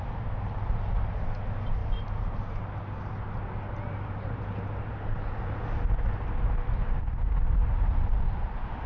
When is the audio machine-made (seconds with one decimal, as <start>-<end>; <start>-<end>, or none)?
none